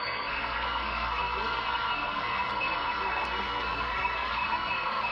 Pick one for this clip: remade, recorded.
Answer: remade